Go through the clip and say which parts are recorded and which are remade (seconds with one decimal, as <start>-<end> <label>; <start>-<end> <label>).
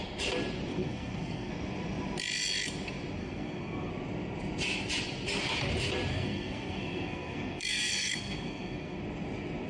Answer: 0.0-0.7 recorded; 0.7-1.5 remade; 1.5-3.2 recorded; 3.2-3.9 remade; 3.9-6.1 recorded; 6.1-9.0 remade; 9.0-9.7 recorded